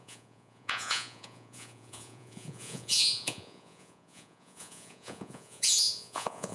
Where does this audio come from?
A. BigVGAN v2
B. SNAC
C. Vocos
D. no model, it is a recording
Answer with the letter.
C